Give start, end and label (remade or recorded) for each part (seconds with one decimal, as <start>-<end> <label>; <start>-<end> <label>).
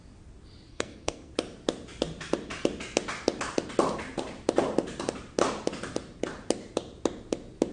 0.0-0.7 recorded; 0.7-1.3 remade; 1.3-7.7 recorded